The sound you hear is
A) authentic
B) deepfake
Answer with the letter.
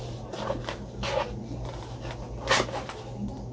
A